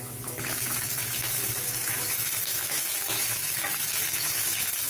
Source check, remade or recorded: remade